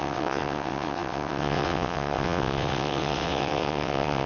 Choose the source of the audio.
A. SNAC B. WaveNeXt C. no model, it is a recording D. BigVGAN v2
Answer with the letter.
B